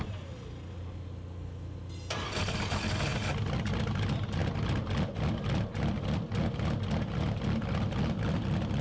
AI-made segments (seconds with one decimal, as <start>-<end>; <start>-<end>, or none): none